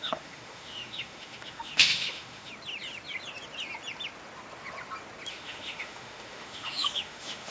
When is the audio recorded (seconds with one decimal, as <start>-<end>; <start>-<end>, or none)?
2.5-5.3